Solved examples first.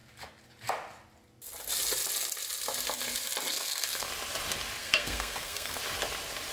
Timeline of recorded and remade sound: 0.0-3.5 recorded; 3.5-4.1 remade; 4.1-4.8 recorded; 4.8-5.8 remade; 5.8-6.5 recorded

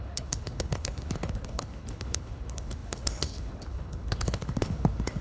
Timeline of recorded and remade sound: 0.0-5.2 remade

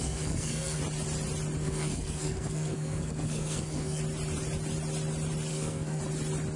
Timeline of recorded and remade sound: 0.0-0.8 remade; 0.8-1.6 recorded; 1.6-4.0 remade; 4.0-5.5 recorded; 5.5-6.0 remade; 6.0-6.6 recorded

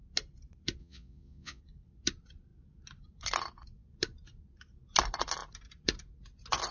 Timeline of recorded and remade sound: 0.0-0.8 recorded; 0.8-1.6 remade; 1.6-6.7 recorded